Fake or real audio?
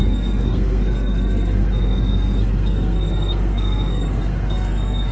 fake